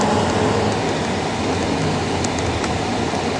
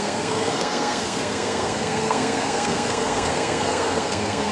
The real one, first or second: first